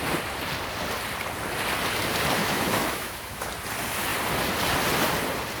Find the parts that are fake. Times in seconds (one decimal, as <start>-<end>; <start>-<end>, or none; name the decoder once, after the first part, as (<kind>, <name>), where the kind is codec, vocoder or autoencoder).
2.4-3.5 (autoencoder, DAC-VAE)